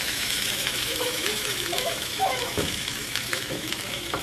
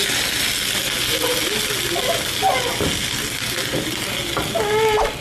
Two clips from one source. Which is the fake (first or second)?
first